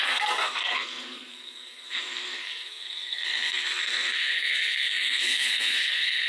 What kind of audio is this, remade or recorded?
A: remade